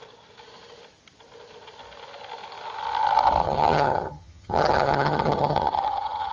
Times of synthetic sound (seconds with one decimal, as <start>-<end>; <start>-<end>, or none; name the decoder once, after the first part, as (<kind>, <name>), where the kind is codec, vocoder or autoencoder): 3.4-6.3 (vocoder, HiFi-GAN)